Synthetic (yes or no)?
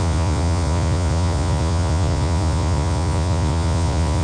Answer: yes